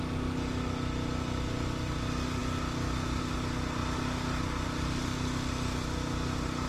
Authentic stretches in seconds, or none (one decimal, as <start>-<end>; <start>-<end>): 0.0-6.7